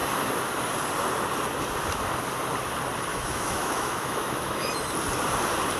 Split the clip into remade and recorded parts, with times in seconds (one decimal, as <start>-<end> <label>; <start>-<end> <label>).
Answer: 0.0-3.1 recorded; 3.1-4.7 remade; 4.7-5.8 recorded